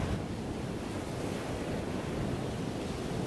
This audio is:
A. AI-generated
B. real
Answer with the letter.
B